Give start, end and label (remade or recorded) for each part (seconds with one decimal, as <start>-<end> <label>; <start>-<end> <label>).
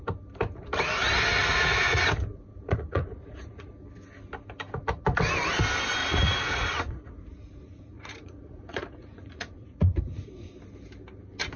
0.0-1.4 recorded; 1.4-3.7 remade; 3.7-6.0 recorded; 6.0-10.5 remade; 10.5-11.6 recorded